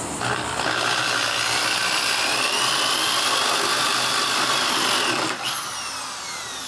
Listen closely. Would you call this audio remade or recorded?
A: recorded